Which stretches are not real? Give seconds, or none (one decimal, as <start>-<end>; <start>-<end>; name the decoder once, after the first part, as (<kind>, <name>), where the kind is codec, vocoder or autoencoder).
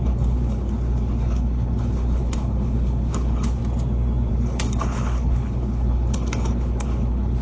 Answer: 0.0-3.6 (codec, HILCodec); 4.3-7.4